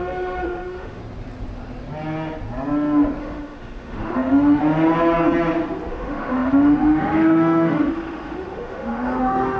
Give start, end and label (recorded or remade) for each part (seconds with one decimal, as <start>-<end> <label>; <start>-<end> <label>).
0.0-1.0 remade; 1.0-3.2 recorded; 3.2-4.6 remade; 4.6-5.9 recorded; 5.9-9.6 remade